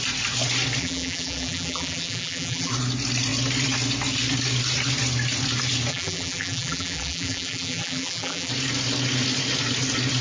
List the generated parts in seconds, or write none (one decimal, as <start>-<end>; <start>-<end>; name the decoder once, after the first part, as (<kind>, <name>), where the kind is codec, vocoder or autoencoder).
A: 0.8-2.7 (vocoder, BigVGAN v2); 5.9-8.5

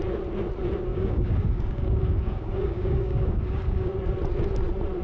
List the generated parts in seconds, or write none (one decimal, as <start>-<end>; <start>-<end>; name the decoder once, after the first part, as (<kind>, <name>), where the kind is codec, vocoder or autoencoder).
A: 0.9-3.9 (codec, DAC)

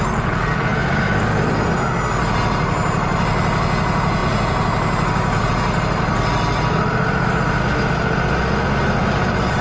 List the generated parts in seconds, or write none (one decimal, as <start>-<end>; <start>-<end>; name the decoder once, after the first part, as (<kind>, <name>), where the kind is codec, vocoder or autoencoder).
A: none

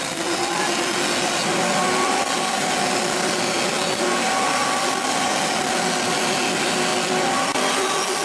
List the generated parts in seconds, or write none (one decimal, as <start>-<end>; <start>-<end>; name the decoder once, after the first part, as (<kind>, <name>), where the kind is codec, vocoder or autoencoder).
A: none

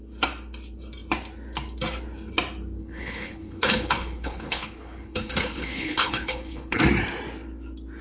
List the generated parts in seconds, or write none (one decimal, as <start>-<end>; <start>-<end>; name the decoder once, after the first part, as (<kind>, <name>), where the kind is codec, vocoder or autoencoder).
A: 2.8-6.8 (codec, HILCodec)